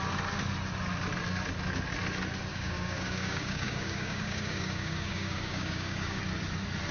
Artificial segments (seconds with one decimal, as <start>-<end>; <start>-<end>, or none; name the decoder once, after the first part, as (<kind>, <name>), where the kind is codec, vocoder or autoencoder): 2.5-6.2 (codec, DAC)